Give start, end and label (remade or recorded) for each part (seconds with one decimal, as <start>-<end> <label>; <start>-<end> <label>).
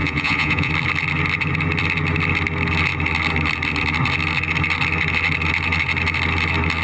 0.0-0.7 remade; 0.7-6.8 recorded